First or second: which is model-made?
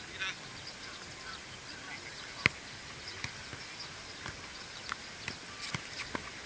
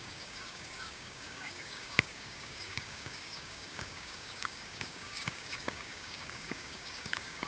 second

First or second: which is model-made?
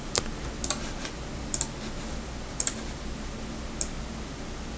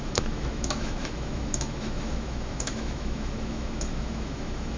second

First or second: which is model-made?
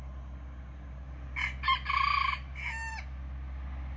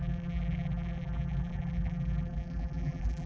second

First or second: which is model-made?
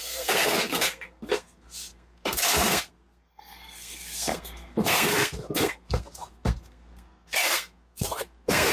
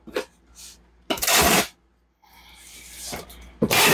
first